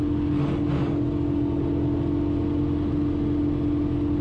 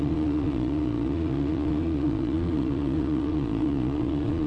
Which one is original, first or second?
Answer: first